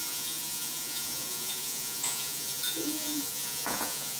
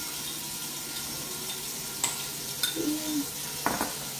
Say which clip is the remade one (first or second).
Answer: first